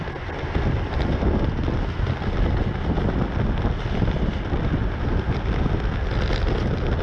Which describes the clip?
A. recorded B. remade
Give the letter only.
A